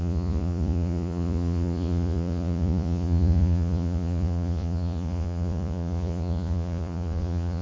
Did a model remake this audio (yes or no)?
yes